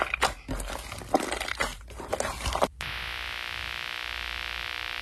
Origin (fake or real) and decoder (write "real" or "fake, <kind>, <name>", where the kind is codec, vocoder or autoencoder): real